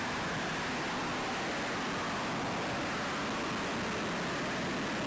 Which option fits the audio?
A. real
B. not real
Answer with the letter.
A